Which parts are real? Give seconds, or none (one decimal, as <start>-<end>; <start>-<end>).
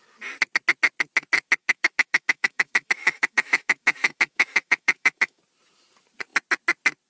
0.0-1.6; 5.4-7.1